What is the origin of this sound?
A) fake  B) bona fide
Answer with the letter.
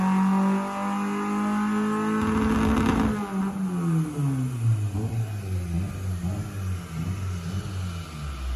B